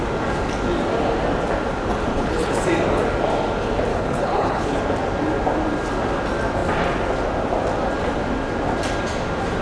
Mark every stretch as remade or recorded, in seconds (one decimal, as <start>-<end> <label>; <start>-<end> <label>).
0.0-2.1 recorded; 2.1-2.6 remade; 2.6-3.9 recorded; 3.9-4.8 remade; 4.8-9.6 recorded